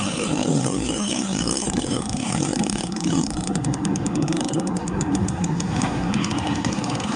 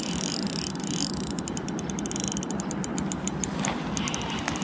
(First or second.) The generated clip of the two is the first